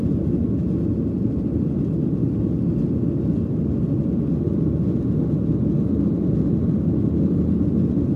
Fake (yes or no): no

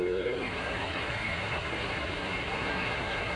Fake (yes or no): yes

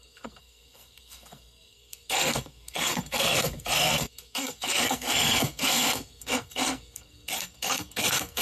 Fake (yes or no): yes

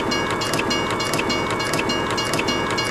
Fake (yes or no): no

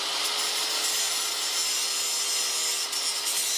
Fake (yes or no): no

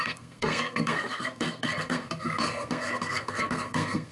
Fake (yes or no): yes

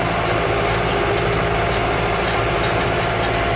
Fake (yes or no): no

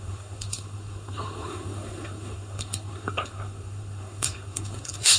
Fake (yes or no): yes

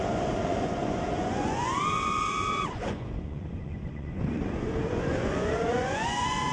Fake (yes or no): yes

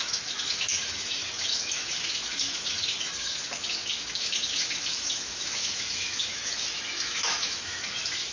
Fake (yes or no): yes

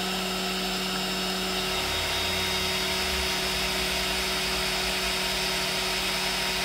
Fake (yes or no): no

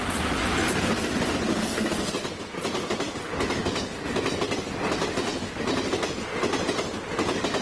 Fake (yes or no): no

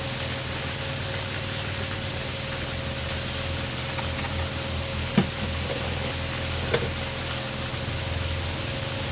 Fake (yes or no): no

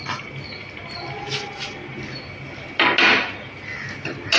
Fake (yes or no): no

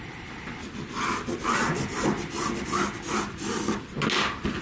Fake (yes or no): no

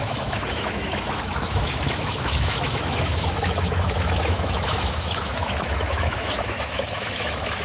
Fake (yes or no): yes